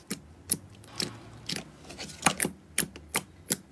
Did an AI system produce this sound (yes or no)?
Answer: no